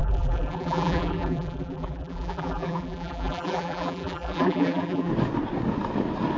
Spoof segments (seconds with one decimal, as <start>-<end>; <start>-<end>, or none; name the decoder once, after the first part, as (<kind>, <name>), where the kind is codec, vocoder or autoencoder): 0.0-5.1 (vocoder, BigVGAN v2)